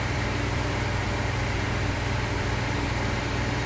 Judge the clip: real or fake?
fake